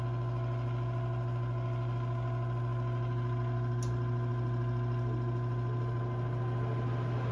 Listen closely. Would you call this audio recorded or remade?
recorded